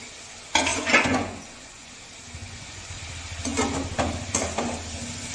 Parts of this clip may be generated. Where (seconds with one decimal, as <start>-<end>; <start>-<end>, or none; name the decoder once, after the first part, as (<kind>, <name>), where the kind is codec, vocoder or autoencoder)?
0.7-1.9 (vocoder, Vocos); 2.4-3.0

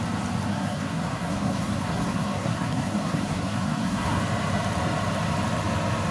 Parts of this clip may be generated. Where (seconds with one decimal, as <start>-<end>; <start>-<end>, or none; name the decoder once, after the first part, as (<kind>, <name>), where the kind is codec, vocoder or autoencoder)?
0.5-4.2 (codec, SNAC)